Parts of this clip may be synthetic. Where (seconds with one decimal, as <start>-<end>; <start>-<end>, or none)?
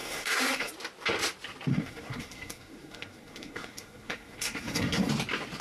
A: 0.0-0.7; 1.7-5.1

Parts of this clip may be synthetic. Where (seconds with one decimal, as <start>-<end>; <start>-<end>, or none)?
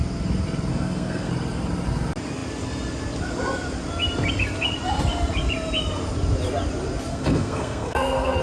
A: 0.7-1.3; 7.1-8.4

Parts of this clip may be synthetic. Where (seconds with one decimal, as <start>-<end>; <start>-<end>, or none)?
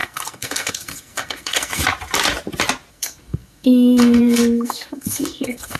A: 0.0-1.8; 2.9-5.8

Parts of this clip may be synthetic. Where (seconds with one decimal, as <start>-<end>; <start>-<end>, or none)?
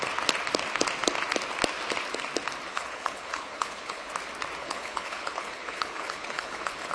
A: 2.7-4.1; 4.6-6.9